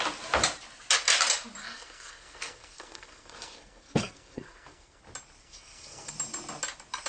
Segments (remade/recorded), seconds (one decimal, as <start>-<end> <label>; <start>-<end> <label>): 0.0-1.6 recorded; 1.6-5.0 remade; 5.0-5.4 recorded; 5.4-6.1 remade; 6.1-7.1 recorded